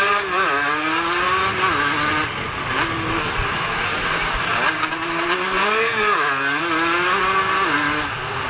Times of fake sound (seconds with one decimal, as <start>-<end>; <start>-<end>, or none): none